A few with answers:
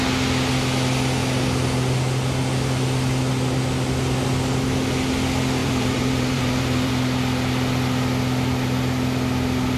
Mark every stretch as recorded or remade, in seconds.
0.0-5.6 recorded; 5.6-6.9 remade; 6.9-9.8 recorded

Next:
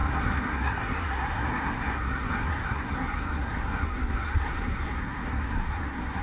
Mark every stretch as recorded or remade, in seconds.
0.0-6.2 remade